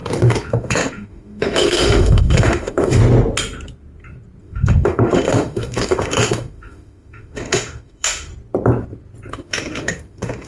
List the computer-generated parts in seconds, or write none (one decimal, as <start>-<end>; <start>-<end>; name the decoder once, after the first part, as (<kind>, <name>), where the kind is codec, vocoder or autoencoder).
0.0-3.0 (autoencoder, DAC-VAE); 4.4-8.3; 9.3-10.5